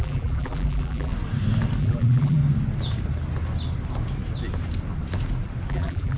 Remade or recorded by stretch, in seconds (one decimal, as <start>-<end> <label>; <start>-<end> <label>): 0.0-1.1 remade; 1.1-1.8 recorded; 1.8-2.4 remade; 2.4-5.7 recorded; 5.7-6.2 remade